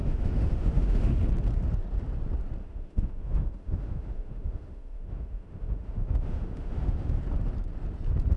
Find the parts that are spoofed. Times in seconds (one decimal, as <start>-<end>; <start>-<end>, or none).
0.0-1.2; 2.6-7.2